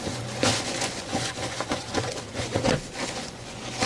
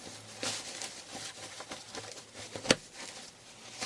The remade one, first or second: first